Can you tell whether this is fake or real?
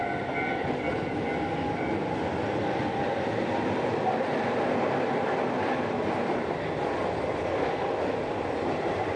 real